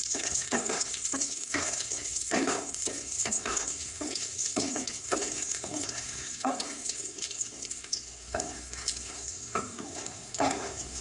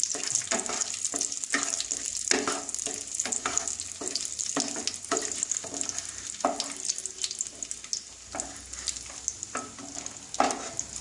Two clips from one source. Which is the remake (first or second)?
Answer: first